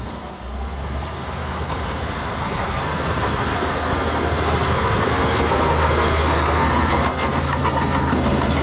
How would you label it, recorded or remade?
remade